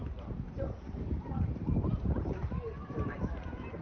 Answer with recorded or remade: remade